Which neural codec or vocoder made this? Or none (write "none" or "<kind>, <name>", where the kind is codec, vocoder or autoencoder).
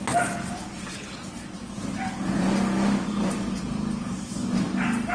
none